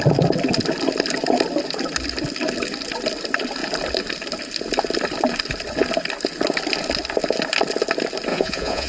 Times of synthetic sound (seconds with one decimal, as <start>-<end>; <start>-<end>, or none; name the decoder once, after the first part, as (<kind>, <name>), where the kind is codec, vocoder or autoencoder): 8.3-8.9 (vocoder, Vocos)